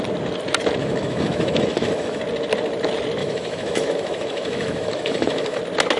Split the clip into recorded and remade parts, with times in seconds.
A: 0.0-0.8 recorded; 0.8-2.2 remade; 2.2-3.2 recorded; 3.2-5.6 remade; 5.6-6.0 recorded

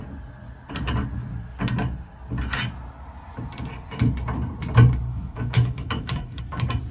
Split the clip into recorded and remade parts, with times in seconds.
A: 0.0-5.1 recorded; 5.1-6.4 remade; 6.4-6.9 recorded

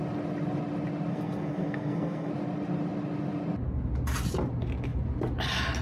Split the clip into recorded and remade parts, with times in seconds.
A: 0.0-1.1 recorded; 1.1-2.3 remade; 2.3-5.8 recorded

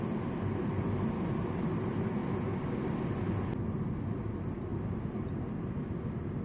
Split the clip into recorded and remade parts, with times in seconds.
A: 0.0-4.7 recorded; 4.7-5.6 remade; 5.6-6.4 recorded